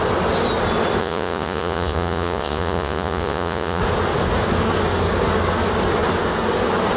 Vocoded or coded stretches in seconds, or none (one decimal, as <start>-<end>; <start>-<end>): 1.0-3.8